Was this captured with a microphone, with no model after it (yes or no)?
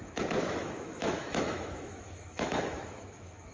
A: no